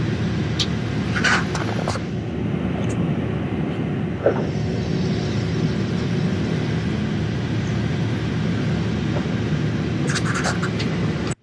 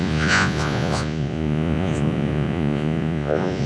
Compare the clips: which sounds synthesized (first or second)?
second